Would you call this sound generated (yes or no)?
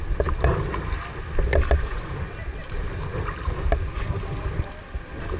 no